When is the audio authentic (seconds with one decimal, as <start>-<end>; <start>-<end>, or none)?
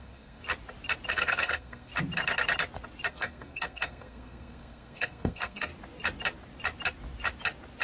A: 0.4-1.1; 1.9-3.1; 5.7-7.8